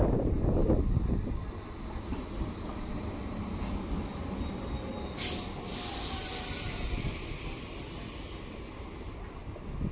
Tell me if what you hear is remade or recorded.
recorded